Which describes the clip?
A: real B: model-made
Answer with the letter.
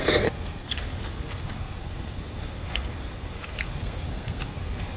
B